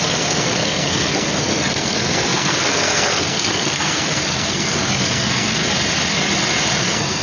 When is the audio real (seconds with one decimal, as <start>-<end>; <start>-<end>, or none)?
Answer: 5.6-6.8